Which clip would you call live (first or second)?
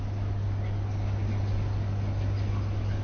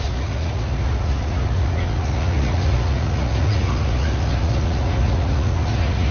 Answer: first